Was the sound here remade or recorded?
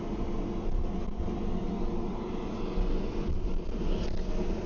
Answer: recorded